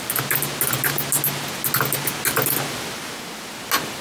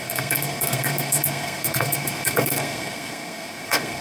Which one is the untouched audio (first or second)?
first